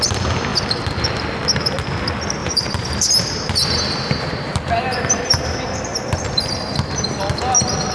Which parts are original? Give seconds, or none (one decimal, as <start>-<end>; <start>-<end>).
0.0-2.4; 7.1-7.9